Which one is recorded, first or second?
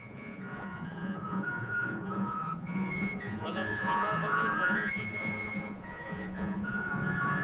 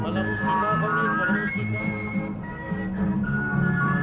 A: second